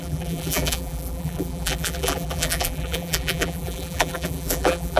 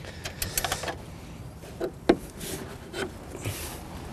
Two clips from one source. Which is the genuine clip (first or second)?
second